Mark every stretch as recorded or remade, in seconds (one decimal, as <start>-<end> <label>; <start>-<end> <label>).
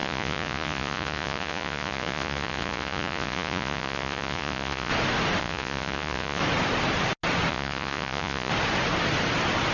0.0-4.9 remade; 4.9-5.4 recorded; 5.4-6.4 remade; 6.4-7.5 recorded; 7.5-8.5 remade; 8.5-9.7 recorded